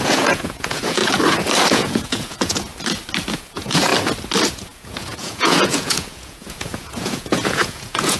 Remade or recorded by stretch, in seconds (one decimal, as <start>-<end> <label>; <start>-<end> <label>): 0.0-1.0 remade; 1.0-1.7 recorded; 1.7-2.7 remade; 2.7-3.3 recorded; 3.3-3.9 remade; 3.9-4.5 recorded; 4.5-8.2 remade